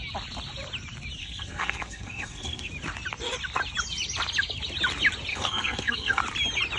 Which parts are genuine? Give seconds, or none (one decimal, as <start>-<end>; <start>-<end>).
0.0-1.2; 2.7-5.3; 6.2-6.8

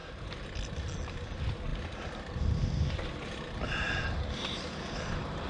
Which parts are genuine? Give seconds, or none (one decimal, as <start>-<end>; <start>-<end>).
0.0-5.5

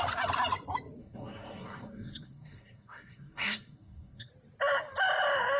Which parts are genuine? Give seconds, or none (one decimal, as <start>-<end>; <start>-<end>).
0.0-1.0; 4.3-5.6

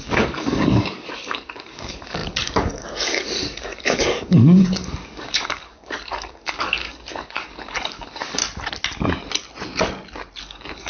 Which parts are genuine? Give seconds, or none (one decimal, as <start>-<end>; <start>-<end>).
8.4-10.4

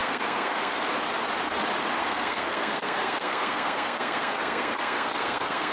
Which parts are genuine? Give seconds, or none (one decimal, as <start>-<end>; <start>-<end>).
0.8-2.0